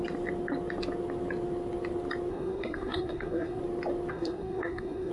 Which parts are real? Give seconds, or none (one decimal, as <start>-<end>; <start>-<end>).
0.0-2.3; 3.6-4.1